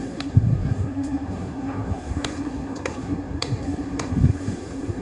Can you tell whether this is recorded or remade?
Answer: remade